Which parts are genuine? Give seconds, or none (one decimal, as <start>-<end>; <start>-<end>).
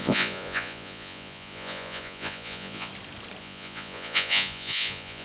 2.9-3.4